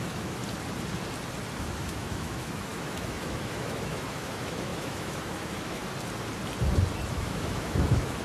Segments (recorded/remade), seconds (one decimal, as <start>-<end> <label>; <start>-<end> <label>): 0.0-0.4 remade; 0.4-1.6 recorded; 1.6-5.8 remade; 5.8-7.1 recorded; 7.1-8.2 remade